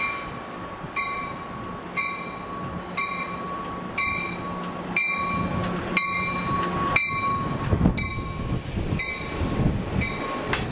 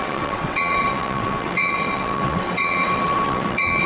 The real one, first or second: first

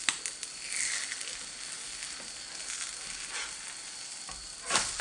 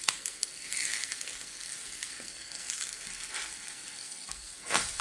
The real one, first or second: first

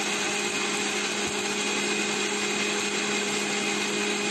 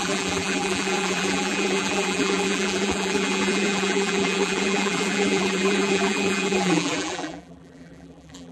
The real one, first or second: first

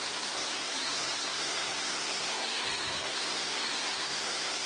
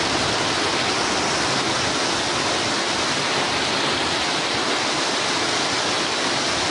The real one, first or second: second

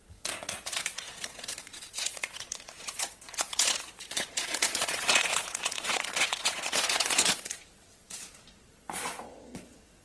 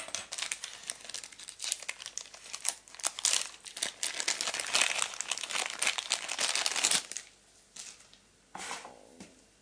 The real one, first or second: second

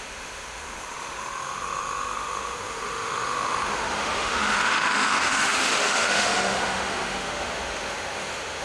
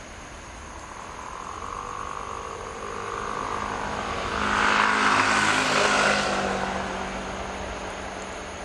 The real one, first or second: second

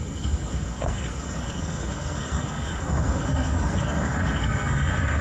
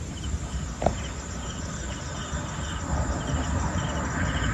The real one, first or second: second